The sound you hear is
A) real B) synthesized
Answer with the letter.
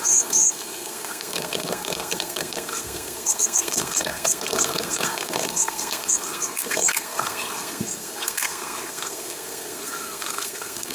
B